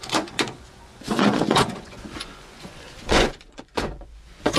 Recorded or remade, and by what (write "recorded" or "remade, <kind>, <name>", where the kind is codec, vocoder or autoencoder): remade, vocoder, Vocos